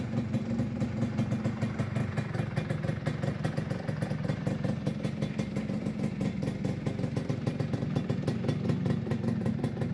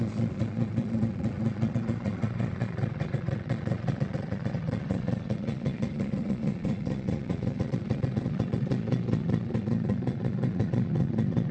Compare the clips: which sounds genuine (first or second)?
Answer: first